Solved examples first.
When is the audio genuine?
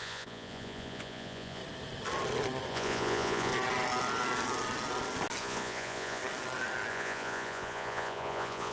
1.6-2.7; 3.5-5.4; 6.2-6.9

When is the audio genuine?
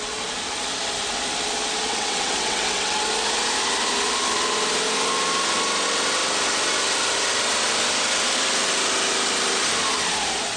0.0-1.9; 3.1-10.6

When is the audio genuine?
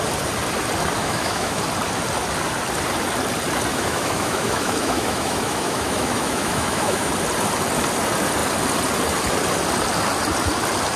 0.0-1.0; 1.6-3.7; 7.1-11.0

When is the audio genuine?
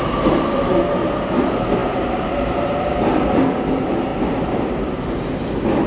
0.0-5.9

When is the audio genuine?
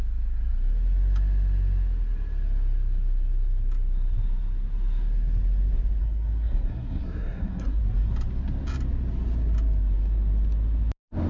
0.0-6.0; 7.8-11.3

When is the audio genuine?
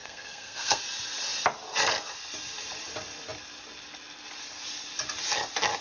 0.8-5.8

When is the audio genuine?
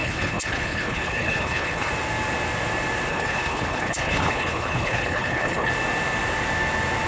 1.9-3.1; 5.7-7.1